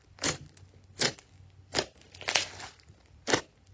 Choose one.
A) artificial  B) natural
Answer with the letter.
B